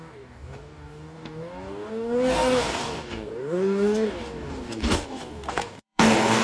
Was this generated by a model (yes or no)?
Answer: yes